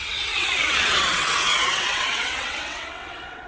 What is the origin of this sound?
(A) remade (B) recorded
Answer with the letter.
A